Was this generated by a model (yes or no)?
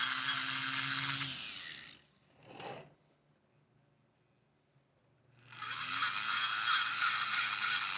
no